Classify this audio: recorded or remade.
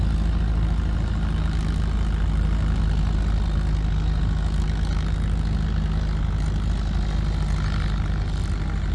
recorded